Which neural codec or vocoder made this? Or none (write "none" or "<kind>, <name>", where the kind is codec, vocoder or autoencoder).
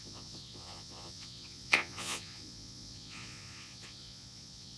vocoder, Vocos